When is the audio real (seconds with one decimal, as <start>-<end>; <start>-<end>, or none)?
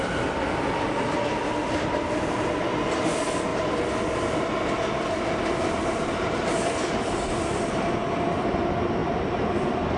0.0-10.0